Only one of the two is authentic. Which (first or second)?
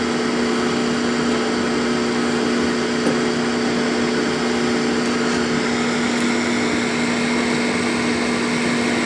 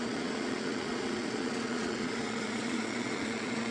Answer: first